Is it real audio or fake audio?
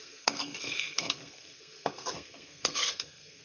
fake